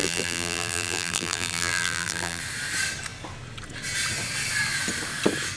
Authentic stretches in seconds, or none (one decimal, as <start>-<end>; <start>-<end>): 2.4-5.6